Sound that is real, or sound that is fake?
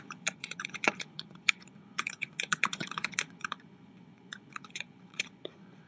fake